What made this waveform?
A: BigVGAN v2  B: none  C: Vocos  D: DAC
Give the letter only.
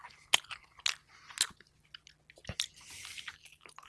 B